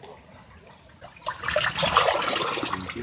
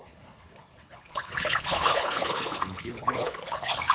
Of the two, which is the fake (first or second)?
second